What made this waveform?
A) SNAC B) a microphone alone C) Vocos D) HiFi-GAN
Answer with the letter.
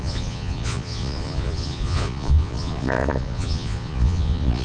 C